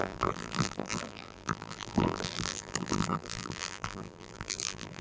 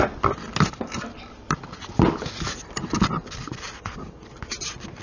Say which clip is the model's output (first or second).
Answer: first